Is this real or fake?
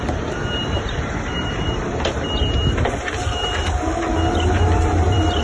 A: fake